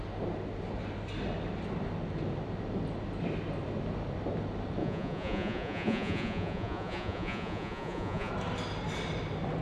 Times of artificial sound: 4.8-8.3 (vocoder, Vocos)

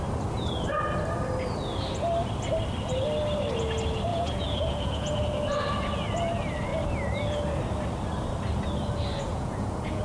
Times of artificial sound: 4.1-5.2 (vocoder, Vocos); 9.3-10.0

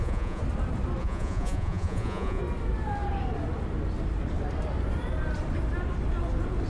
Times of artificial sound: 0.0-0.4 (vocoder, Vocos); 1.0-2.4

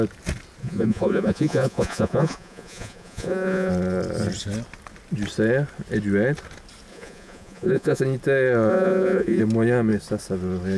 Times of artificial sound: 0.6-3.7 (vocoder, Vocos); 6.9-8.0; 8.7-9.4

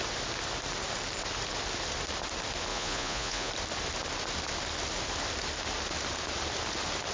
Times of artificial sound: 2.7-3.5 (vocoder, Vocos)

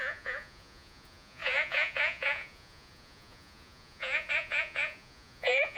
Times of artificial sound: 0.0-5.8 (vocoder, Vocos)